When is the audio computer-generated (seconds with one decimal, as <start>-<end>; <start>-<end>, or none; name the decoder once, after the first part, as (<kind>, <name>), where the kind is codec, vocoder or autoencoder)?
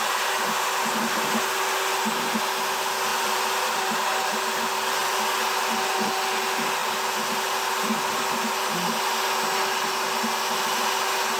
3.1-4.3 (vocoder, BigVGAN v2); 6.8-8.5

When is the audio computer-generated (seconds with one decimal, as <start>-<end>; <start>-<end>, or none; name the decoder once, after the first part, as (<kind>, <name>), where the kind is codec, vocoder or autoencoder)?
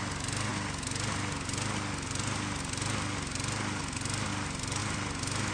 none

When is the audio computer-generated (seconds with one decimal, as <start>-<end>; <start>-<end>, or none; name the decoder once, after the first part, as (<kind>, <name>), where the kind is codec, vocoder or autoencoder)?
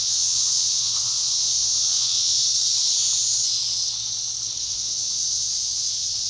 0.0-2.4 (vocoder, WaveNeXt); 4.6-6.3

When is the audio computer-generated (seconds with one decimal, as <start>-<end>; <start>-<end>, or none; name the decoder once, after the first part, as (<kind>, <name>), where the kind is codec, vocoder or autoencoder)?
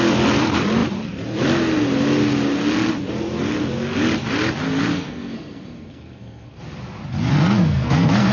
4.9-6.6 (codec, SNAC); 7.3-8.3